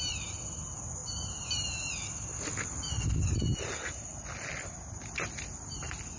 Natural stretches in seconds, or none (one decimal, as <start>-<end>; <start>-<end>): 0.0-6.2